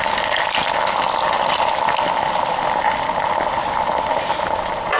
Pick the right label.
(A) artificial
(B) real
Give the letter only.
B